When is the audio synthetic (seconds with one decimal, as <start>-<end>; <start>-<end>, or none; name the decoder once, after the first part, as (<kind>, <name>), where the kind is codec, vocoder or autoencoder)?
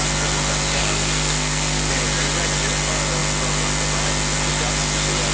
0.8-1.9 (codec, SNAC)